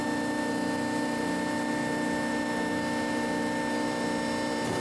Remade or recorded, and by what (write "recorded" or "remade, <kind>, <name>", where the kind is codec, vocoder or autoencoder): recorded